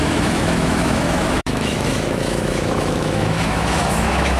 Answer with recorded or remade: remade